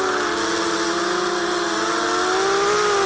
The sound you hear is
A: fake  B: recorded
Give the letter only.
B